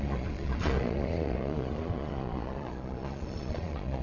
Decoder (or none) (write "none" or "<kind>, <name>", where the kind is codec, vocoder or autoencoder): vocoder, Vocos